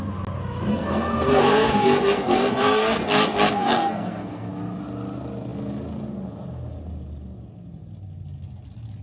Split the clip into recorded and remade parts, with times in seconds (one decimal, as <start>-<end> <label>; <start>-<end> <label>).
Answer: 0.0-0.7 recorded; 0.7-4.5 remade; 4.5-9.0 recorded

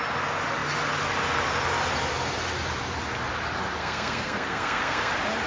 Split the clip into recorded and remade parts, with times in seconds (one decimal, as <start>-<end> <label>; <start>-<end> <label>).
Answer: 0.0-3.8 recorded; 3.8-5.1 remade; 5.1-5.5 recorded

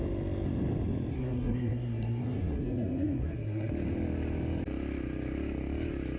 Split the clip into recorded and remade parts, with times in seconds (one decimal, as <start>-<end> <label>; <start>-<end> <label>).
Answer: 0.0-1.1 recorded; 1.1-3.7 remade; 3.7-6.2 recorded

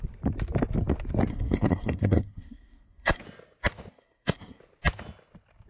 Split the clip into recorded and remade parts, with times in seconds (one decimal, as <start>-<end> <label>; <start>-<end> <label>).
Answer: 0.0-1.3 recorded; 1.3-3.2 remade; 3.2-3.9 recorded; 3.9-4.6 remade; 4.6-5.7 recorded

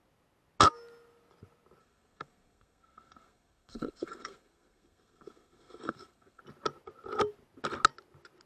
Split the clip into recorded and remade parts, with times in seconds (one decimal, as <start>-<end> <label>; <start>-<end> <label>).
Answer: 0.0-1.8 recorded; 1.8-6.4 remade; 6.4-8.5 recorded

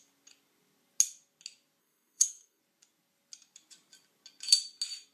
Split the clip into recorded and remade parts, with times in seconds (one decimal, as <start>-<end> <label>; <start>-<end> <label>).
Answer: 0.0-1.8 recorded; 1.8-2.6 remade; 2.6-5.1 recorded